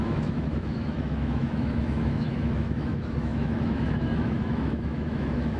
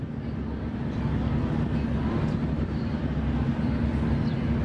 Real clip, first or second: second